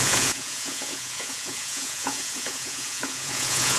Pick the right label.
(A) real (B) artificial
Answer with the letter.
B